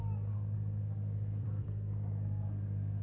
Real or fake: fake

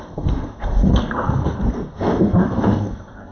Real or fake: fake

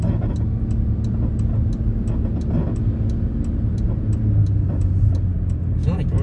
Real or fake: real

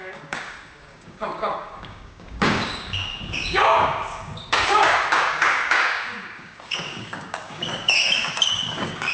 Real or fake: fake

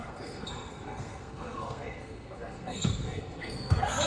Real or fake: fake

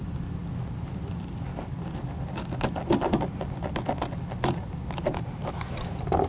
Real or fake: real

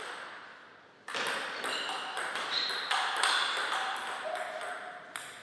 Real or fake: real